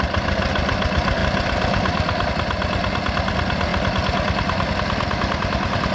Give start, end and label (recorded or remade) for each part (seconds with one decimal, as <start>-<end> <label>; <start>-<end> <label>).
0.0-1.2 recorded; 1.2-2.3 remade; 2.3-5.9 recorded